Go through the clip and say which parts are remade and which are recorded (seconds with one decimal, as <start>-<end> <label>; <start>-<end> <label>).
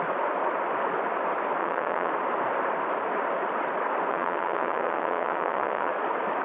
0.0-1.6 recorded; 1.6-2.1 remade; 2.1-4.1 recorded; 4.1-5.9 remade; 5.9-6.4 recorded